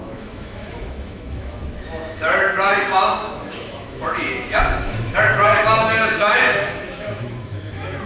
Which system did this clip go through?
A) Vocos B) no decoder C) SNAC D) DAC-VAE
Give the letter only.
D